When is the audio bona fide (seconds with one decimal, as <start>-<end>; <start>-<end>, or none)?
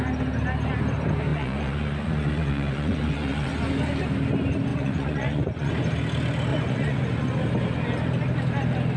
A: 0.0-1.3; 3.5-4.7; 5.7-6.5; 7.4-9.0